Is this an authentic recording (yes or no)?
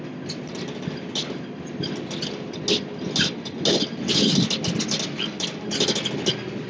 yes